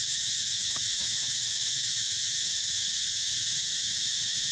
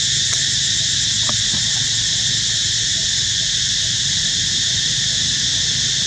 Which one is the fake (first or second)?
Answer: first